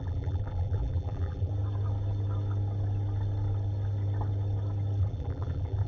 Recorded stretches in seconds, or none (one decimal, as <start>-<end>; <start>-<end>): 1.5-5.0